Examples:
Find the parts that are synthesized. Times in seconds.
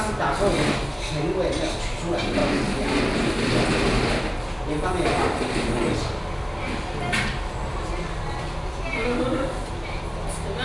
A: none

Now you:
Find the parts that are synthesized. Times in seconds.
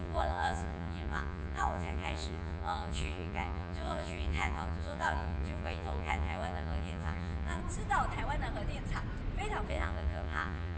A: 0.0-7.6 (vocoder, Vocos); 9.7-10.8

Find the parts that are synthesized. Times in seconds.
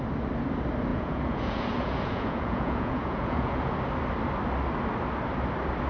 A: 0.9-3.8 (vocoder, Vocos)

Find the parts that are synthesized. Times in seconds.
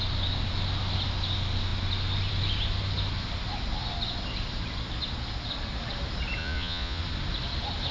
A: 6.4-7.0 (vocoder, Vocos)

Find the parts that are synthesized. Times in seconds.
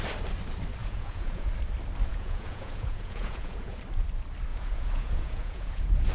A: 0.8-1.5 (vocoder, Vocos); 2.1-3.8; 4.5-6.1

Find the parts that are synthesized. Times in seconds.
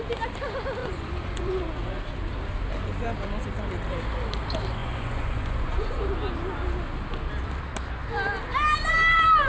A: 0.8-1.6 (vocoder, Vocos); 4.8-6.0